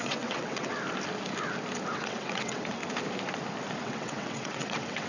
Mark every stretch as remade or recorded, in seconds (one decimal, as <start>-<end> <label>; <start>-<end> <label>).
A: 0.0-0.7 remade; 0.7-1.9 recorded; 1.9-2.8 remade; 2.8-3.8 recorded; 3.8-5.1 remade